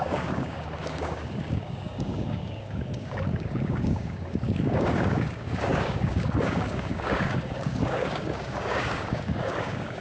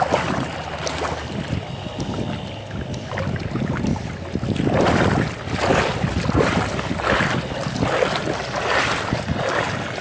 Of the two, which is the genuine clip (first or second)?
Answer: second